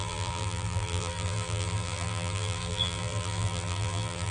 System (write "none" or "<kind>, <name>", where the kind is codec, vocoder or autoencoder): vocoder, BigVGAN v2